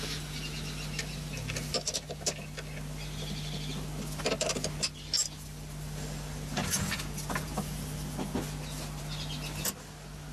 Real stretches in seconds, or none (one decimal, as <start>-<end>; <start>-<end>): 0.0-10.3